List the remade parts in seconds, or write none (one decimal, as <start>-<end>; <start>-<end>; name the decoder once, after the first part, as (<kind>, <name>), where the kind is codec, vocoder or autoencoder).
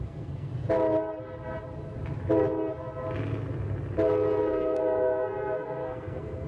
0.0-0.5 (codec, SNAC); 4.4-6.5